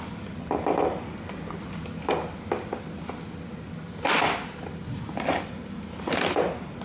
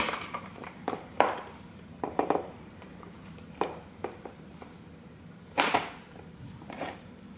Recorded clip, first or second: first